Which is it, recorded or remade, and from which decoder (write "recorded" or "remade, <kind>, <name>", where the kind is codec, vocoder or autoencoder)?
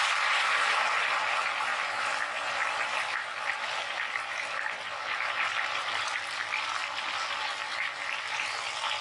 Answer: recorded